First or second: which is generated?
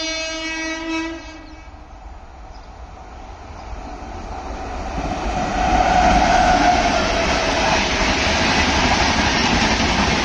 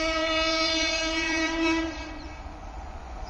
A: second